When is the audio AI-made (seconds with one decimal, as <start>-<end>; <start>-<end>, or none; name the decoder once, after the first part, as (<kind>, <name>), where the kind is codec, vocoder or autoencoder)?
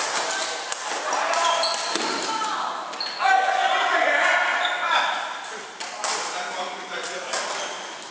none